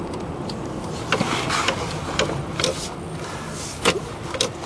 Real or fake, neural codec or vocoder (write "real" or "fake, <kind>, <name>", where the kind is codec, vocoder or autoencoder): real